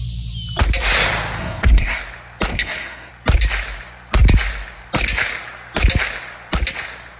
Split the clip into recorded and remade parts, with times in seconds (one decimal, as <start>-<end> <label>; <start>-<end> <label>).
0.0-1.4 recorded; 1.4-2.0 remade; 2.0-2.5 recorded; 2.5-3.1 remade; 3.1-7.2 recorded